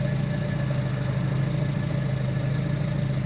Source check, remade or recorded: recorded